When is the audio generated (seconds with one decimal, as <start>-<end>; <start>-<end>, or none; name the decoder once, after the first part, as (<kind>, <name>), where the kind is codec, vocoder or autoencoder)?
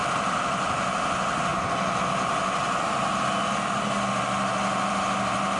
0.0-1.0 (vocoder, BigVGAN v2)